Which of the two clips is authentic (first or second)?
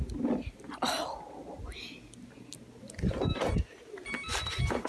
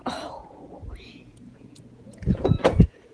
first